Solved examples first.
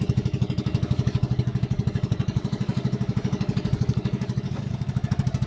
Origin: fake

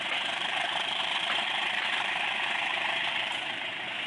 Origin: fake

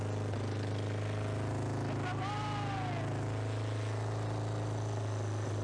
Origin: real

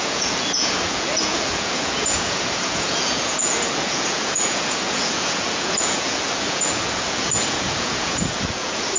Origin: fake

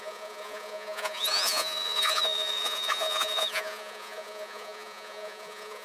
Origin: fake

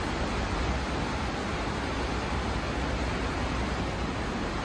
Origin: real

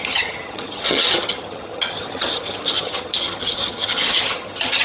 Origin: fake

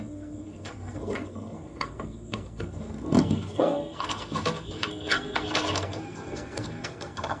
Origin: fake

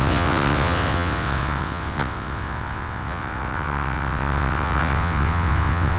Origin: fake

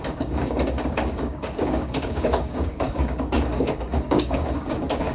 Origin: fake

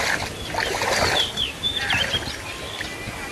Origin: real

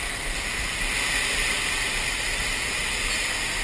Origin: real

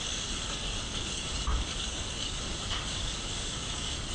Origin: fake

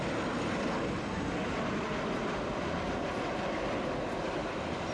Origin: real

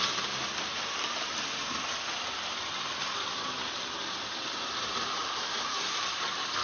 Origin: real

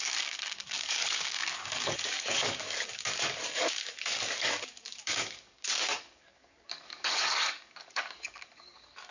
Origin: fake